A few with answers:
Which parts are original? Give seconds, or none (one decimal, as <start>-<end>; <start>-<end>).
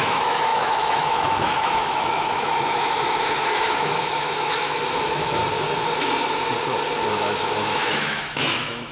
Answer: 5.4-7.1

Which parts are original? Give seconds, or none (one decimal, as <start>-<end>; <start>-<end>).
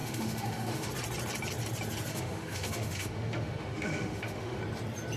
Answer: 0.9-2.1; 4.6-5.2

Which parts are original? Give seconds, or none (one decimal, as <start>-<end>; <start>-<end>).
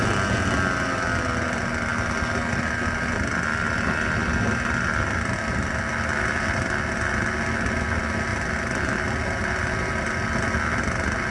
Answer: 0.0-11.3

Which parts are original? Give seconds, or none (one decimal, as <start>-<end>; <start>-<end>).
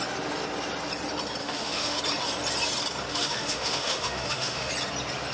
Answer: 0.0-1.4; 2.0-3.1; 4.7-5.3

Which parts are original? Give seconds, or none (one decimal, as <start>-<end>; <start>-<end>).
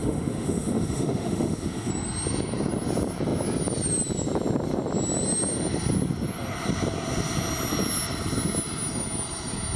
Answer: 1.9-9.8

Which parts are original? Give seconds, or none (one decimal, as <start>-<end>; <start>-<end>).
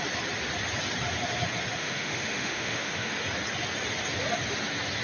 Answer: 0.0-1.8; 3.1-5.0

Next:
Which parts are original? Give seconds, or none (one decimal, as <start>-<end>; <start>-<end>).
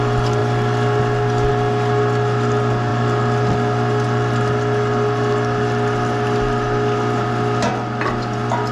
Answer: 0.0-8.7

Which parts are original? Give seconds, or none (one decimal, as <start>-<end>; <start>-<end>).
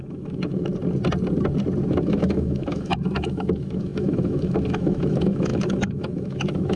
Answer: 0.7-1.9